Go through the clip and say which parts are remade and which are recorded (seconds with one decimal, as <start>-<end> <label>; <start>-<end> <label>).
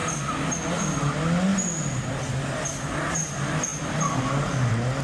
0.0-5.0 recorded